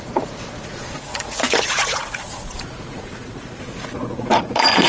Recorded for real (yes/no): no